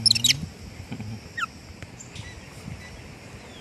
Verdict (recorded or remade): recorded